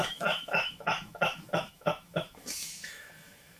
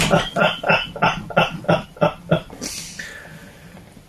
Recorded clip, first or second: second